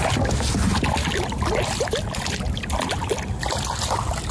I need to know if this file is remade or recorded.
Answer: recorded